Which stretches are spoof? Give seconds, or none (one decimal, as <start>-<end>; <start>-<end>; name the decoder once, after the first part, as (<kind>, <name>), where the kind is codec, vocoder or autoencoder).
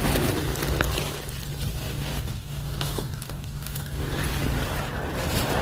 1.7-4.1 (codec, DAC)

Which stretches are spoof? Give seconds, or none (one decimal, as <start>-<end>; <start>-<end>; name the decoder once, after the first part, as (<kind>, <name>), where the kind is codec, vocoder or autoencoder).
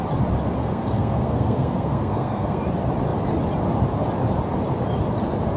0.6-2.6 (codec, SNAC)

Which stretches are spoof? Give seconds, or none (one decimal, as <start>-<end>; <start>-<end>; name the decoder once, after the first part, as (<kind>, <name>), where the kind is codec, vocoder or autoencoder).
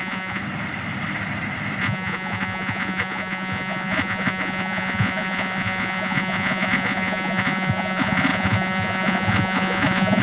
0.0-0.4 (vocoder, Vocos); 1.8-10.2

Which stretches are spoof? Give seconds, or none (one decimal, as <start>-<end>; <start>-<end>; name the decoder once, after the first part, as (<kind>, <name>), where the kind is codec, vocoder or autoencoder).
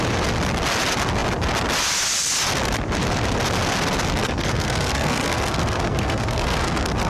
4.2-7.1 (codec, SNAC)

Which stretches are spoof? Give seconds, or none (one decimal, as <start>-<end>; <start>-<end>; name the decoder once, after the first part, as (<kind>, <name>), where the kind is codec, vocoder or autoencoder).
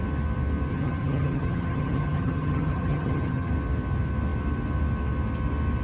0.7-3.5 (vocoder, HiFi-GAN)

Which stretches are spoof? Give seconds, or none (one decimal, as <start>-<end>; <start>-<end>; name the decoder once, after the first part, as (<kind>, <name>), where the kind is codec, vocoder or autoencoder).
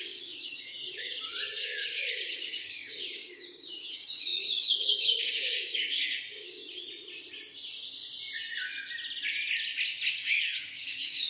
0.0-6.6 (codec, DAC); 10.1-11.3